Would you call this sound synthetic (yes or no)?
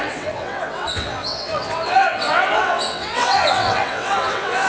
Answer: yes